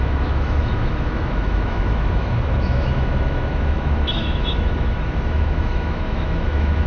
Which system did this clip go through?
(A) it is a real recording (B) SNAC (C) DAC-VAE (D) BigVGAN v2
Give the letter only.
C